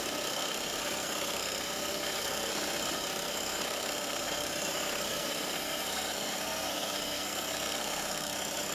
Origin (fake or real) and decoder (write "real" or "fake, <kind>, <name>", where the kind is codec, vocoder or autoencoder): fake, codec, SNAC